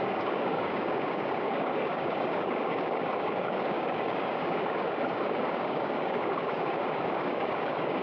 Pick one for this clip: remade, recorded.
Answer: remade